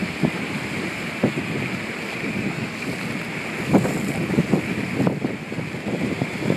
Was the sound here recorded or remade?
recorded